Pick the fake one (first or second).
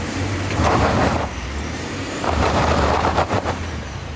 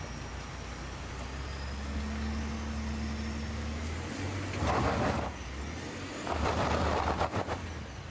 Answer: first